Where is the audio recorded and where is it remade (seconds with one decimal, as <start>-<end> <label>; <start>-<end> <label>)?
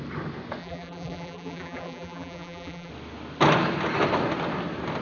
0.0-0.6 recorded; 0.6-2.9 remade; 2.9-5.0 recorded